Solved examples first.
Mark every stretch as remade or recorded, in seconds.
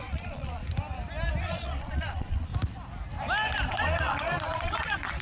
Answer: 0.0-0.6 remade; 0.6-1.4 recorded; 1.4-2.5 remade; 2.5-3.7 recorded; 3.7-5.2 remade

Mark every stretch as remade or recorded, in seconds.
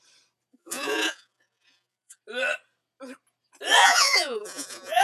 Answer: 0.0-0.5 recorded; 0.5-2.2 remade; 2.2-3.8 recorded; 3.8-5.0 remade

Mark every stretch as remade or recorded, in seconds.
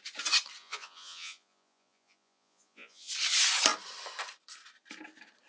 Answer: 0.0-0.6 recorded; 0.6-3.1 remade; 3.1-5.5 recorded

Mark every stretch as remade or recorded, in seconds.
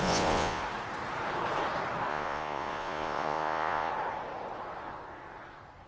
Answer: 0.0-0.6 remade; 0.6-2.1 recorded; 2.1-3.9 remade; 3.9-5.9 recorded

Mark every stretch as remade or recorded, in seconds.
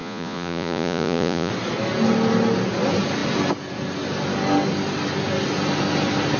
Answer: 0.0-1.5 remade; 1.5-6.4 recorded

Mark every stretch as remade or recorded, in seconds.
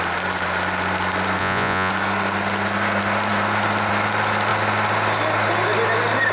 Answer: 0.0-1.4 recorded; 1.4-1.9 remade; 1.9-6.3 recorded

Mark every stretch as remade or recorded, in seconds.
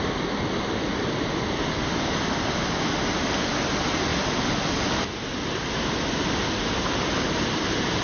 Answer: 0.0-8.0 recorded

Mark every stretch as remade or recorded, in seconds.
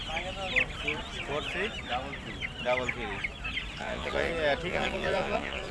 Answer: 0.0-3.8 recorded; 3.8-4.3 remade; 4.3-4.7 recorded; 4.7-5.7 remade